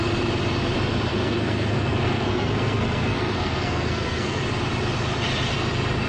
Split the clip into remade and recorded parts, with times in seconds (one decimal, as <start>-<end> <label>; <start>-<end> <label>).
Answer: 0.0-1.1 recorded; 1.1-4.4 remade; 4.4-6.1 recorded